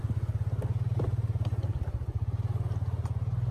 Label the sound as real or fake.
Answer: real